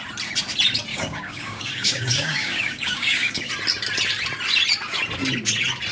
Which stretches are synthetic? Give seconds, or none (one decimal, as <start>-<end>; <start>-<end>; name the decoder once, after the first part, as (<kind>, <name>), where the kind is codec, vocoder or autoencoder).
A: 0.9-3.5 (codec, DAC)